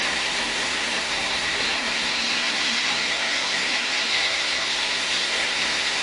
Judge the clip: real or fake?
fake